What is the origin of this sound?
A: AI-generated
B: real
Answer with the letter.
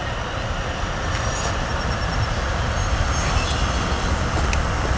B